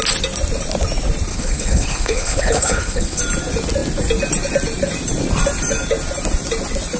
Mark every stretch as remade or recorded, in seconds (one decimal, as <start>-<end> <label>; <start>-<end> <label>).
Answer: 0.0-1.3 recorded; 1.3-3.2 remade; 3.2-7.0 recorded